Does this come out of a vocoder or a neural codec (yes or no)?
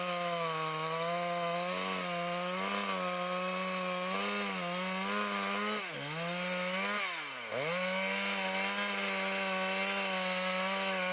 no